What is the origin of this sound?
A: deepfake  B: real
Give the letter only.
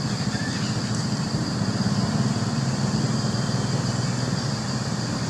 B